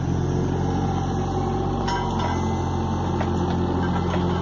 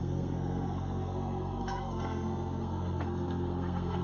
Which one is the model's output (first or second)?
second